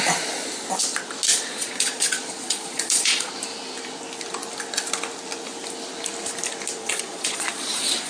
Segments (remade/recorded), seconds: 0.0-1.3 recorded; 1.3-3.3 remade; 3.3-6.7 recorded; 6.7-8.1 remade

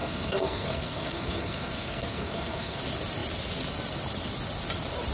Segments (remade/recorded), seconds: 0.0-2.8 remade; 2.8-5.1 recorded

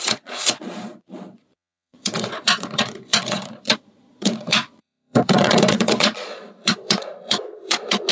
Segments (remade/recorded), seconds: 0.0-8.1 remade

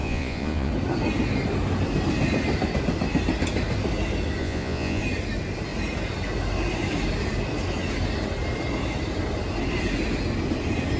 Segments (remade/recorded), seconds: 0.0-0.7 remade; 0.7-4.4 recorded; 4.4-5.0 remade; 5.0-11.0 recorded

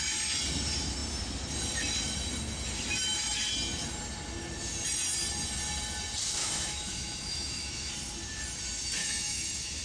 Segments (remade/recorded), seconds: 0.0-6.4 recorded; 6.4-7.9 remade; 7.9-9.0 recorded; 9.0-9.8 remade